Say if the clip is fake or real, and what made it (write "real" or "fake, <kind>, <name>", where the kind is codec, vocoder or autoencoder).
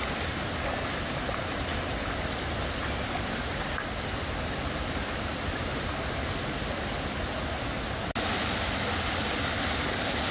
real